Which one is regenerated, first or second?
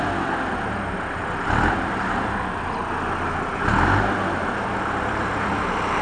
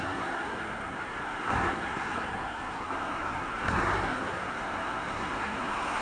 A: second